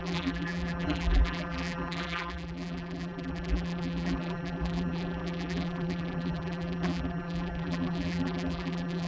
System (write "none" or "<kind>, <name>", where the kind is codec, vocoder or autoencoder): vocoder, BigVGAN v2